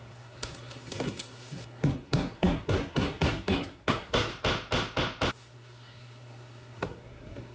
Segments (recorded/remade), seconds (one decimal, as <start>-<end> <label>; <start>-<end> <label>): 0.0-4.3 remade; 4.3-5.3 recorded; 5.3-7.5 remade